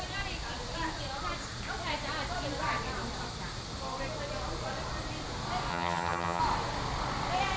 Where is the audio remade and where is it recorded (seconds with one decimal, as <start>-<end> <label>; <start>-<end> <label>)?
0.0-5.7 recorded; 5.7-6.4 remade; 6.4-7.6 recorded